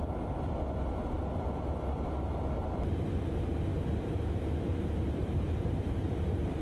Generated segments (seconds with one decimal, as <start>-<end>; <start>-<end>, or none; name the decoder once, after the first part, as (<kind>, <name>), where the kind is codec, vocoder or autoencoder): 5.2-6.6 (vocoder, BigVGAN v2)

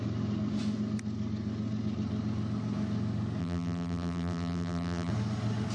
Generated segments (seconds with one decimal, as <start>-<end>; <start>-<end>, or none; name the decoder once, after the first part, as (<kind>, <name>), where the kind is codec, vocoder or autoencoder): 3.4-5.1 (vocoder, BigVGAN v2)

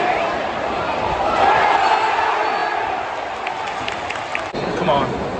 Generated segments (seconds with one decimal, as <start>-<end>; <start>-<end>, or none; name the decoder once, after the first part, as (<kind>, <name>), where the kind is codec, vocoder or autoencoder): 4.3-5.0 (vocoder, BigVGAN v2)